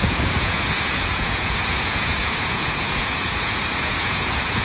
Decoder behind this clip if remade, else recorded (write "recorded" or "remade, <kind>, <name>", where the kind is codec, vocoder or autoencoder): remade, vocoder, Vocos